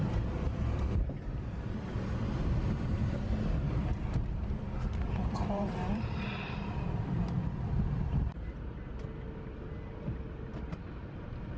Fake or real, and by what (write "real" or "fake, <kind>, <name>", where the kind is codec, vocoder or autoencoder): fake, vocoder, BigVGAN v2